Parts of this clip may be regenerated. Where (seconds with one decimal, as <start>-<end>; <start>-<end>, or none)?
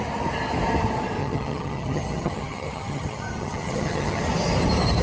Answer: 1.2-4.2